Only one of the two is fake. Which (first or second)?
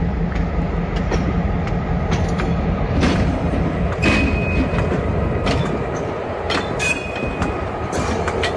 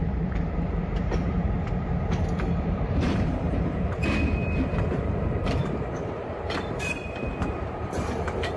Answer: second